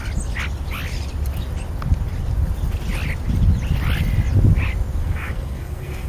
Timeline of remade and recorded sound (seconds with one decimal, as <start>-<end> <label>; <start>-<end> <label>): 0.0-5.0 recorded; 5.0-6.1 remade